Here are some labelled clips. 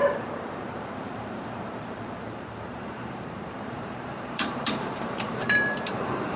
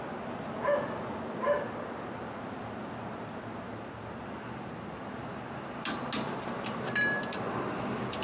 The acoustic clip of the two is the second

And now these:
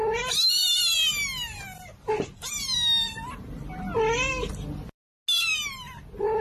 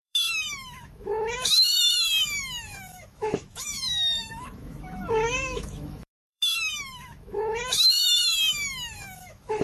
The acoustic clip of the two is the first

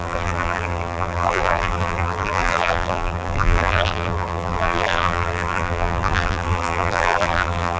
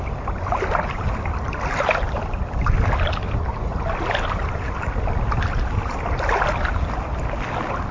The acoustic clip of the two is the second